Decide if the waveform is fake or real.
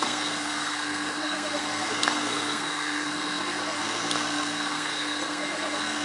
fake